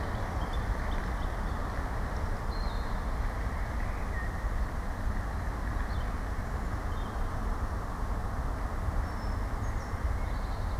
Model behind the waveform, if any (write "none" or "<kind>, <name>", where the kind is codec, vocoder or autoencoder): none